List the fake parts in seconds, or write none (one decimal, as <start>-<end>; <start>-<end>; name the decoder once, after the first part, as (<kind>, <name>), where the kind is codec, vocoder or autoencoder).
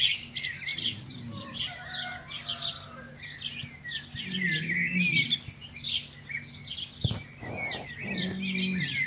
none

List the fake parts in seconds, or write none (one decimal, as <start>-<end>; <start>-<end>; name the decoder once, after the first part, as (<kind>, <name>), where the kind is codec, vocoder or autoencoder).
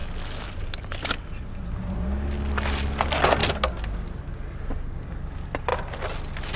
none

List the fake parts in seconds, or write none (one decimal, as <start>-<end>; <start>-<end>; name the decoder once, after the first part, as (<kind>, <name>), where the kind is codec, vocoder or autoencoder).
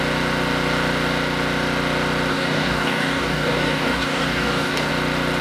2.3-4.9 (codec, DAC)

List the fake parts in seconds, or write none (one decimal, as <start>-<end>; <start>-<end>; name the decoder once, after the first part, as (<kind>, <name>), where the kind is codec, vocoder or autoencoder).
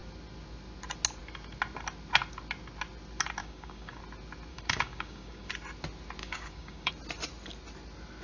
3.4-4.0 (codec, DAC); 4.5-5.5; 6.2-6.9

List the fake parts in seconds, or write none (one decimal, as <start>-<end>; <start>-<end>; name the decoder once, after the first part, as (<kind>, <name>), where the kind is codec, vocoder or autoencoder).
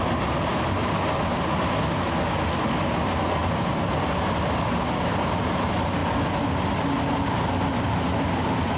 none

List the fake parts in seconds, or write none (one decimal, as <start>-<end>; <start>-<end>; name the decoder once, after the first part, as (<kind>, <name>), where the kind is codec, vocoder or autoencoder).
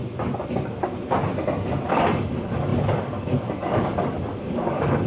1.9-5.1 (codec, DAC)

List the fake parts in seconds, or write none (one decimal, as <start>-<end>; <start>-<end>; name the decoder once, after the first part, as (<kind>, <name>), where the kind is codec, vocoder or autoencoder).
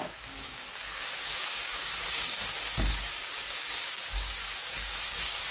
0.0-5.5 (codec, DAC)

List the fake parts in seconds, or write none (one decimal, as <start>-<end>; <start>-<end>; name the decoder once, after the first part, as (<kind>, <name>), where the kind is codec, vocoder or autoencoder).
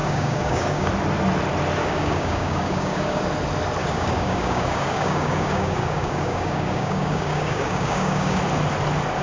0.0-0.9 (codec, DAC); 1.8-3.2; 3.8-8.4